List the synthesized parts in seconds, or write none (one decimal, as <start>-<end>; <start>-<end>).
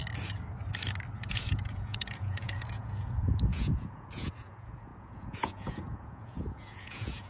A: 1.3-7.3